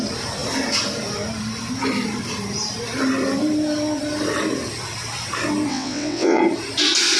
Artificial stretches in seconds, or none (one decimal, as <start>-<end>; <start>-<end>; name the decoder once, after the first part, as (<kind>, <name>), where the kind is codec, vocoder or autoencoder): 5.7-6.4 (vocoder, WaveNeXt)